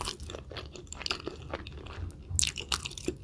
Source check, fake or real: real